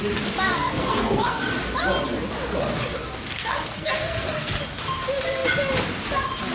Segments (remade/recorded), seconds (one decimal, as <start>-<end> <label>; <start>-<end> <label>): 0.0-0.5 recorded; 0.5-1.5 remade; 1.5-3.3 recorded; 3.3-4.6 remade; 4.6-6.5 recorded